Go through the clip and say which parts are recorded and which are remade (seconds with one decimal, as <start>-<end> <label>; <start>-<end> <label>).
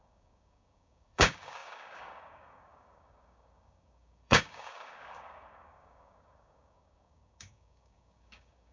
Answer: 0.0-8.7 remade